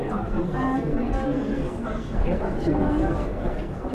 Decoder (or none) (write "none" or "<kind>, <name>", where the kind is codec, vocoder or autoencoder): codec, SNAC